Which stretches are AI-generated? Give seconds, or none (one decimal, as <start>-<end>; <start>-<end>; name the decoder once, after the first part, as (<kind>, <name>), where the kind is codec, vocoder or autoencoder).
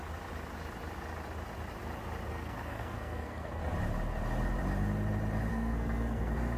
2.3-3.6 (codec, SNAC); 5.5-6.6